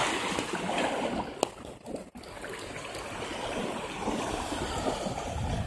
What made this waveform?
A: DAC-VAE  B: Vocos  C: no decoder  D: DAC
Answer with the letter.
C